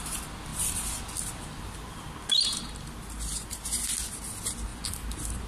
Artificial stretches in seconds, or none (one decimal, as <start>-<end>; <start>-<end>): 0.5-1.6; 4.7-5.5